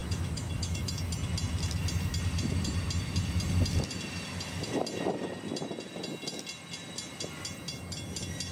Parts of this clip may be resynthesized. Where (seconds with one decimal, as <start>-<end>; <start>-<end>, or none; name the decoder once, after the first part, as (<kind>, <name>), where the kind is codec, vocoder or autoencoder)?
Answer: 0.0-0.9 (autoencoder, DAC-VAE)